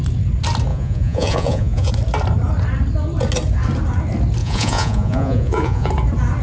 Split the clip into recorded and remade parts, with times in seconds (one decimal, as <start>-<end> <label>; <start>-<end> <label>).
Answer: 0.0-0.7 recorded; 0.7-1.9 remade; 1.9-4.4 recorded; 4.4-5.9 remade; 5.9-6.4 recorded